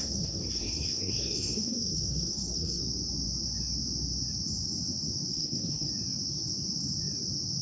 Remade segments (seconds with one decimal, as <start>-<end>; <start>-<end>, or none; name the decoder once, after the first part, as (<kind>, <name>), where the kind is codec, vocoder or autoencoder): 0.0-2.8 (codec, SNAC); 5.3-5.9